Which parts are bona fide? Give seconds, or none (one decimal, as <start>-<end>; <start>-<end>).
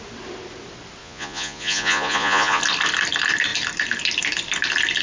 0.0-1.0; 2.6-5.0